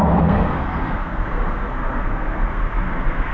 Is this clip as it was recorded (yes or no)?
no